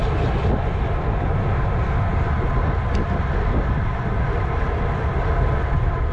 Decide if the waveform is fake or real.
real